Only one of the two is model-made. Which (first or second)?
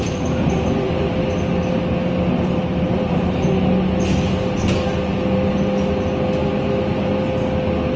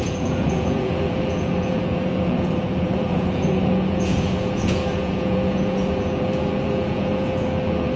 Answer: second